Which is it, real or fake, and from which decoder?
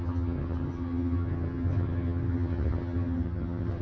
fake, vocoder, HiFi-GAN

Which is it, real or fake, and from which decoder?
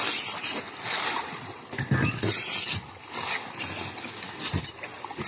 real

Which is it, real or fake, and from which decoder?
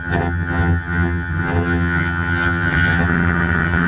fake, vocoder, HiFi-GAN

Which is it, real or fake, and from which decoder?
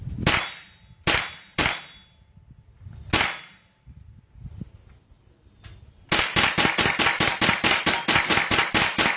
real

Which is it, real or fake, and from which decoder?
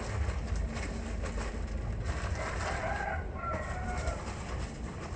real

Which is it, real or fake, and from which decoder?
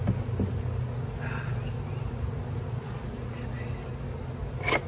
real